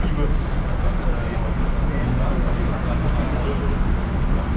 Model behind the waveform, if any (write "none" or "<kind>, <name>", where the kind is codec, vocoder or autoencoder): none